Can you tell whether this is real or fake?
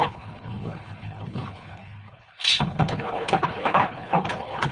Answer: fake